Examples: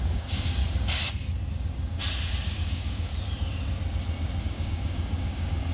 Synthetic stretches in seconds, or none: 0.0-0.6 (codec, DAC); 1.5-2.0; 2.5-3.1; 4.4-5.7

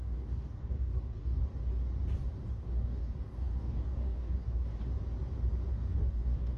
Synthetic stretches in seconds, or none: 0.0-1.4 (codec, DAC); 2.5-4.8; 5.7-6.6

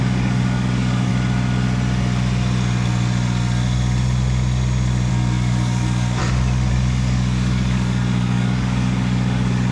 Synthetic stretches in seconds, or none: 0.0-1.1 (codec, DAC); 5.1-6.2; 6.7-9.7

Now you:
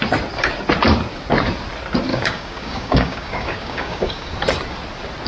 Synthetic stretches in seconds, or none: 2.1-4.3 (codec, DAC)

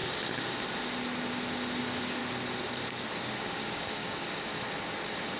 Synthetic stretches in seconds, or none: 1.8-2.2 (codec, DAC); 3.2-4.5

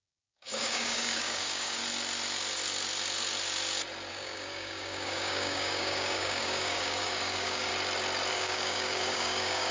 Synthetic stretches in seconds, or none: 0.0-1.8 (codec, DAC); 4.1-7.7; 8.3-9.7

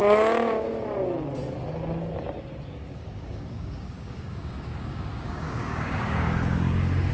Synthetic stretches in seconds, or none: 0.0-0.7 (codec, DAC); 2.8-7.1

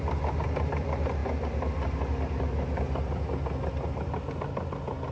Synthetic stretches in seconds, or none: none